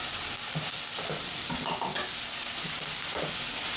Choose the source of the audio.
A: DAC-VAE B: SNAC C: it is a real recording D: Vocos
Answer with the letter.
C